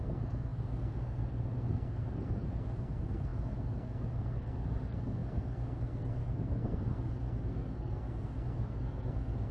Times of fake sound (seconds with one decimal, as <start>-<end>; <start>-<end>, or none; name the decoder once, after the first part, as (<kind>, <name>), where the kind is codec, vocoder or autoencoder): 0.0-9.5 (codec, SNAC)